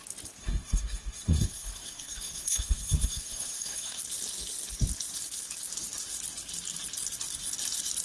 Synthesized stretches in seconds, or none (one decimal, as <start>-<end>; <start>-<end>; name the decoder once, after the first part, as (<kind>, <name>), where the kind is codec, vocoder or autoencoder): 0.4-4.0 (codec, SNAC)